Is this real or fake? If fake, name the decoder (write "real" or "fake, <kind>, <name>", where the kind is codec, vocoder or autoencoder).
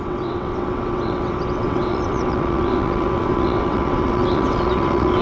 fake, vocoder, WaveNeXt